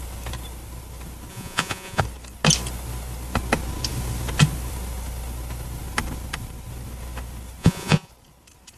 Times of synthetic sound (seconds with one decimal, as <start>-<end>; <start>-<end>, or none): 1.3-2.0; 7.6-8.1